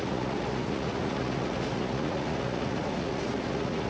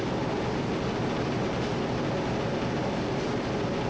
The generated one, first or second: first